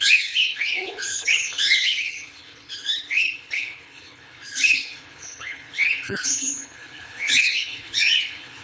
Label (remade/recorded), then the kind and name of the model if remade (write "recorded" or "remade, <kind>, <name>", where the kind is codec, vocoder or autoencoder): remade, codec, HILCodec